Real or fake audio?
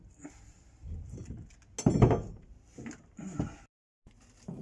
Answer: real